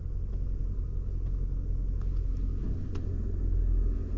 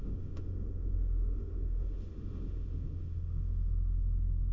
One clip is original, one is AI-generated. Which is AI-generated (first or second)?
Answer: second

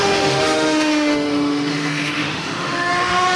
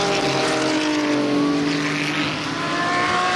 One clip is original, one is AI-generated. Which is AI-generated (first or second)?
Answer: first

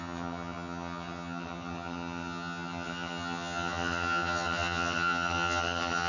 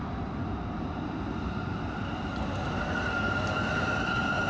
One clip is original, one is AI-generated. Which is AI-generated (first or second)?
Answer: first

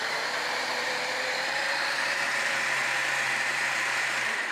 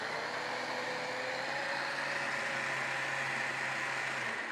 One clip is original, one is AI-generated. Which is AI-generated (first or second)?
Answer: first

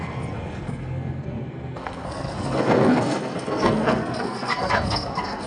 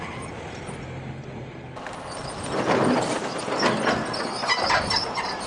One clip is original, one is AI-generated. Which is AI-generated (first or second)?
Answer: first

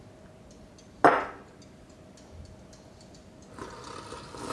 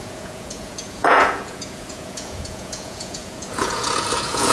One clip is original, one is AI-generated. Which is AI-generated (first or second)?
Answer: second